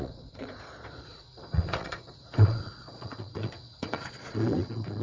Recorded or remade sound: remade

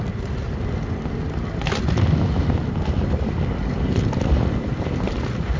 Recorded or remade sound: recorded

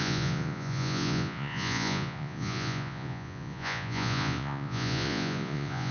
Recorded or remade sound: remade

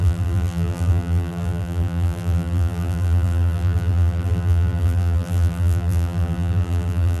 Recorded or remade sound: remade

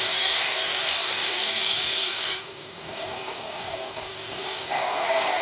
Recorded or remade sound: remade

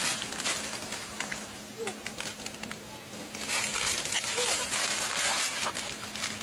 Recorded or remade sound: recorded